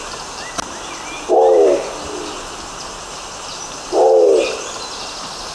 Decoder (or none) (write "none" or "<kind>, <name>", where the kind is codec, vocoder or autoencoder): none